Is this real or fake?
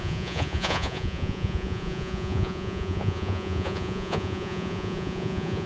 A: fake